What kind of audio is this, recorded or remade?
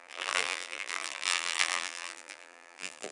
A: remade